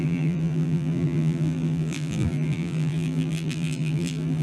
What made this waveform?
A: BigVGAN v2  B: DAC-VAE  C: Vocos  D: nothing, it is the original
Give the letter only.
A